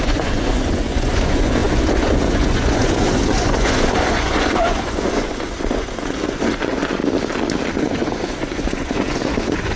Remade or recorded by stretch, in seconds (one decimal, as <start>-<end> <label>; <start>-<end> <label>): 0.0-7.0 remade; 7.0-7.7 recorded; 7.7-9.8 remade